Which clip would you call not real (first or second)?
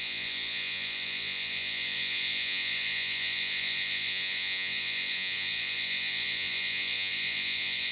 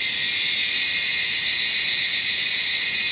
first